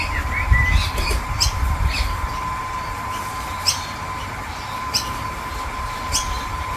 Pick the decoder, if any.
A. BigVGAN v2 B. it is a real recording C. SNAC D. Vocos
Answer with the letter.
A